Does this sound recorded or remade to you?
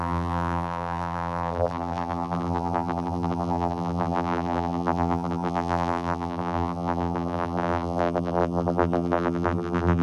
remade